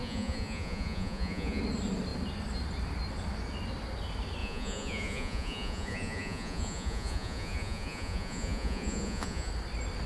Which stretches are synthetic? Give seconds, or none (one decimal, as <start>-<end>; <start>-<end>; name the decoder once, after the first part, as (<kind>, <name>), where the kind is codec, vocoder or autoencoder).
0.0-1.6 (vocoder, Vocos); 4.4-9.5